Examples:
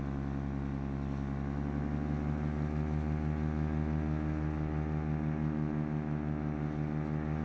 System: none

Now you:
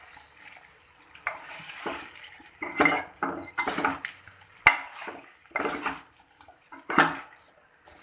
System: none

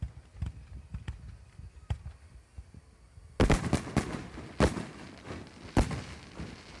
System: none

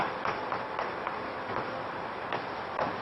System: none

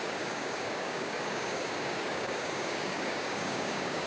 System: codec, DAC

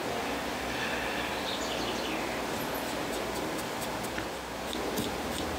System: none